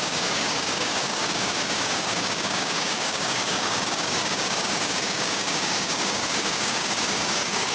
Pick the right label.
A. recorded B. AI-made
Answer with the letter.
B